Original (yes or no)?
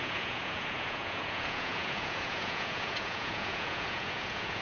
no